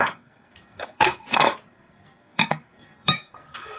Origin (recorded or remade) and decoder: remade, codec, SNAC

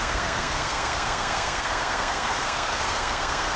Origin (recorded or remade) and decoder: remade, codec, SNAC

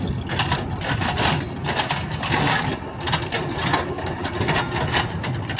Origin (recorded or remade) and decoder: recorded